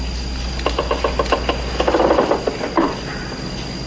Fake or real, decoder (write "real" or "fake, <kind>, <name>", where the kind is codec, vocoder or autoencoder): real